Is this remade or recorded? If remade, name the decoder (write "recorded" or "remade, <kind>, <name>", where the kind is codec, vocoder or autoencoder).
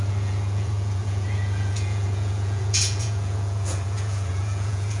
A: remade, vocoder, Vocos